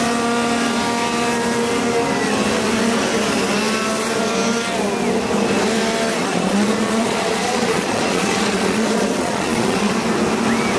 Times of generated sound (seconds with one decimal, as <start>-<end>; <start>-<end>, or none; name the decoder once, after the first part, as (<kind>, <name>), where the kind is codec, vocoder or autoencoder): 6.2-9.9 (vocoder, Vocos)